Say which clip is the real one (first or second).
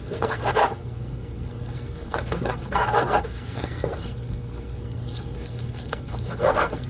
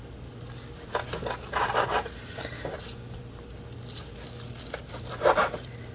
second